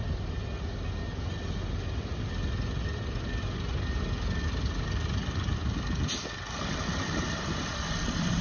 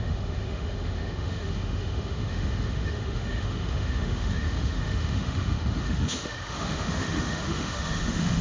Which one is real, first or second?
first